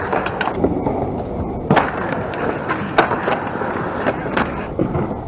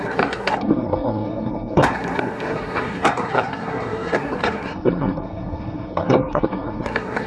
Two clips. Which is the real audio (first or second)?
first